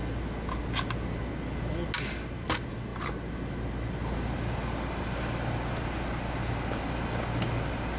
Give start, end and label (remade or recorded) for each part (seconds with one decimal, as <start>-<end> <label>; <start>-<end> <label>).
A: 0.0-8.0 recorded